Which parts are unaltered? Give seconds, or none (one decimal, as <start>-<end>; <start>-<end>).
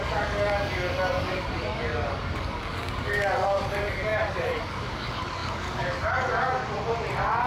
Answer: 6.6-7.5